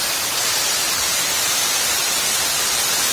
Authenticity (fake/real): fake